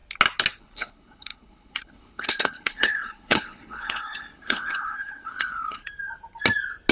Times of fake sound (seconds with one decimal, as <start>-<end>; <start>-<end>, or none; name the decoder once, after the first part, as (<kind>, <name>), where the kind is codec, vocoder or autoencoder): 0.6-5.8 (codec, HILCodec)